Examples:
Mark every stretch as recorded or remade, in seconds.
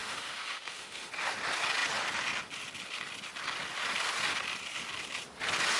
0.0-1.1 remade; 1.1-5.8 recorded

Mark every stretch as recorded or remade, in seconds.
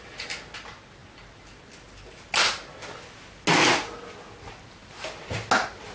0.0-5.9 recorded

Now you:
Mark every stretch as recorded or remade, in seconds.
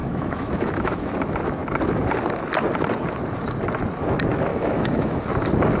0.0-1.1 remade; 1.1-4.5 recorded; 4.5-5.2 remade; 5.2-5.8 recorded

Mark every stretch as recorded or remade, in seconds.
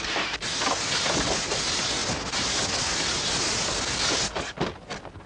0.0-5.3 recorded